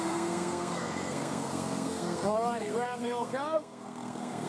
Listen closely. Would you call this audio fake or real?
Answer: fake